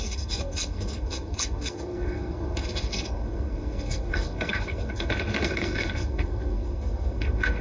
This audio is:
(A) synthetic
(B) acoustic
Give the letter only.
A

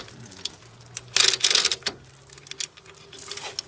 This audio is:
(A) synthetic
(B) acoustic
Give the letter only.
B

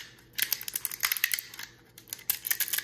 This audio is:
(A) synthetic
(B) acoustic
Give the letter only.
B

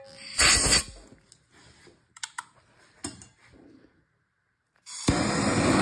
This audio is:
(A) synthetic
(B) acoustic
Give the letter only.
B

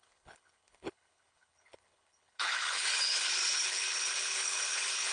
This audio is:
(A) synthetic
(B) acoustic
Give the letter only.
A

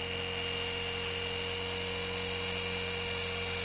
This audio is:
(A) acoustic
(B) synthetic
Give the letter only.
A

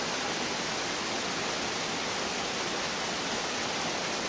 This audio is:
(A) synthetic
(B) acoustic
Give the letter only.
B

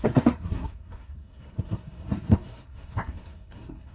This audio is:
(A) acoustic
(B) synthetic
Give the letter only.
B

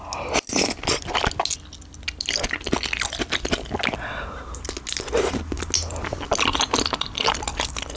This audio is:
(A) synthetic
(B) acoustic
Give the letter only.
B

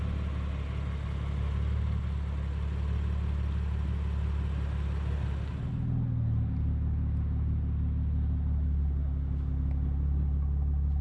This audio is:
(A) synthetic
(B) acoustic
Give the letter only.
B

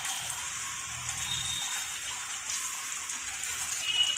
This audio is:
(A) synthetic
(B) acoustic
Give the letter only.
B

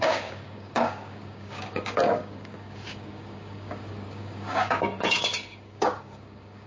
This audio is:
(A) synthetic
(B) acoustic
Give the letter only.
A